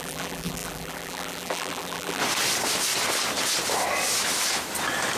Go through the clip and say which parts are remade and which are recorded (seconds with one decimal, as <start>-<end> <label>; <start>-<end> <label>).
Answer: 0.0-2.2 remade; 2.2-5.2 recorded